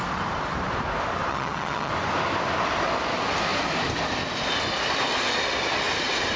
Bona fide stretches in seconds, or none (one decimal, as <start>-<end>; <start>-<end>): 0.0-1.3; 1.9-6.4